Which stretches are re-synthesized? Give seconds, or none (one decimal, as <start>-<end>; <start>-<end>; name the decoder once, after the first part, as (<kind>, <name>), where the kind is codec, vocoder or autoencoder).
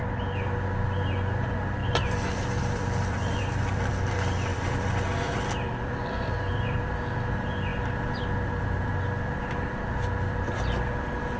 1.8-3.9 (vocoder, BigVGAN v2); 4.5-7.0